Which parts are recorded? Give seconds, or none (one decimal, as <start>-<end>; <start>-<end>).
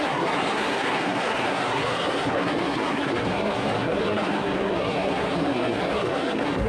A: none